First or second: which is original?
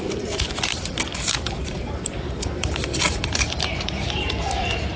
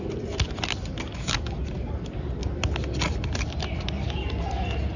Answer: second